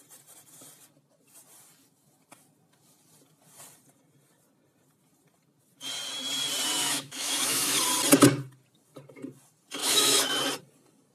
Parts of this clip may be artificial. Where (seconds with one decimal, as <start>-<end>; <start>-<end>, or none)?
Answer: 6.8-7.8; 9.8-10.4

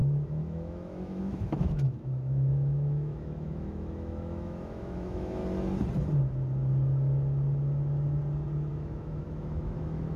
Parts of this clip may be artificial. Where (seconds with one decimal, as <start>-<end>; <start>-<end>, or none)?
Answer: 0.0-5.4; 8.7-10.2

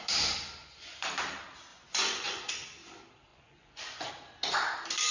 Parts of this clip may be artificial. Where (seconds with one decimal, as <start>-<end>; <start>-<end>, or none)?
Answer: 0.6-1.1; 1.7-2.5; 3.3-4.1

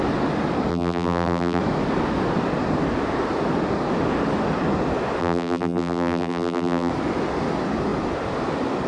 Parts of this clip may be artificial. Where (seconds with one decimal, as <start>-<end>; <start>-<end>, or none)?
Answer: 0.7-1.6; 5.2-6.9